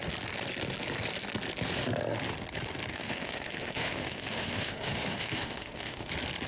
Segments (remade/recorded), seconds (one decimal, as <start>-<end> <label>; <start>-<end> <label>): 0.0-2.9 recorded; 2.9-6.1 remade; 6.1-6.5 recorded